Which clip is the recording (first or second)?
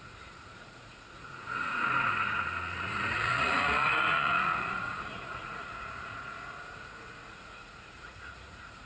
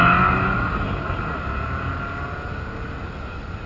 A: second